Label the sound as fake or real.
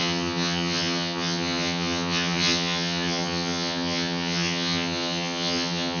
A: fake